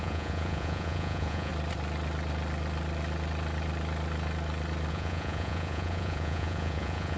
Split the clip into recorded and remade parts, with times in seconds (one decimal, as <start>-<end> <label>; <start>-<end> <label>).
0.0-1.5 remade; 1.5-4.9 recorded; 4.9-7.2 remade